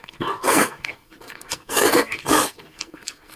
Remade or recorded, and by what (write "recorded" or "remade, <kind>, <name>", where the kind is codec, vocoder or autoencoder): remade, codec, SNAC